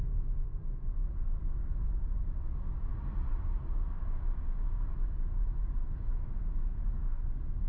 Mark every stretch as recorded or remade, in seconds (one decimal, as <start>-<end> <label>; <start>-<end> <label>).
0.0-6.1 remade; 6.1-7.7 recorded